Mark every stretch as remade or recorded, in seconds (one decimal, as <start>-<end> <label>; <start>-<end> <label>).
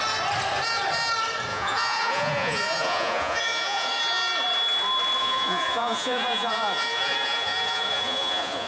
0.0-1.5 recorded; 1.5-4.0 remade; 4.0-5.2 recorded; 5.2-8.7 remade